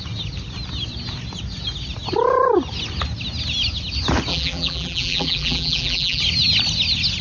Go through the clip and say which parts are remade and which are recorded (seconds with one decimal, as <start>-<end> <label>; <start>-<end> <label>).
0.0-4.3 recorded; 4.3-6.2 remade; 6.2-7.2 recorded